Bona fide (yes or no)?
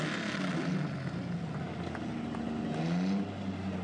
yes